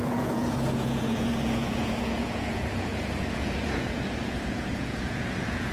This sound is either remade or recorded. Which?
remade